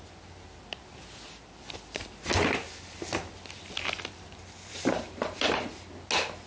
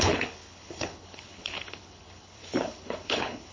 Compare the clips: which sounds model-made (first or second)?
second